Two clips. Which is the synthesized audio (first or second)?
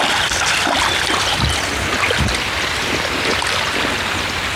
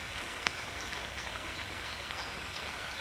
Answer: second